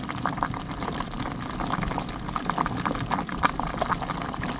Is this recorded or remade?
recorded